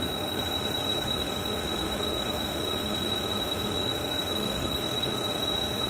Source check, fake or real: fake